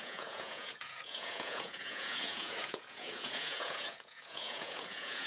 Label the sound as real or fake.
fake